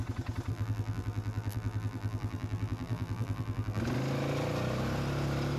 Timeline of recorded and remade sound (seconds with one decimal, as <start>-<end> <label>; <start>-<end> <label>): 0.0-0.5 recorded; 0.5-3.8 remade; 3.8-5.6 recorded